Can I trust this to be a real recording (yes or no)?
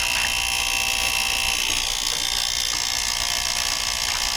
yes